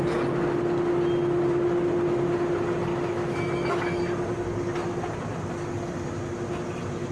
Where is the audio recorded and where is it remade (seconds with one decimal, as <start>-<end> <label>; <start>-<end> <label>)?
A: 0.0-2.9 recorded; 2.9-4.0 remade; 4.0-7.1 recorded